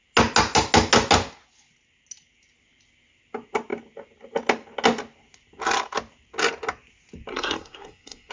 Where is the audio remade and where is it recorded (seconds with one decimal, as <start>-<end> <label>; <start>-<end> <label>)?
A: 0.0-7.3 recorded; 7.3-8.3 remade